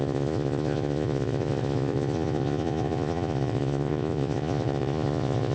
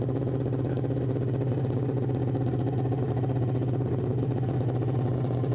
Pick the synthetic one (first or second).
first